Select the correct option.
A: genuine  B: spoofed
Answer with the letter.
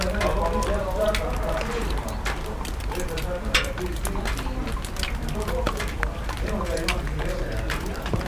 A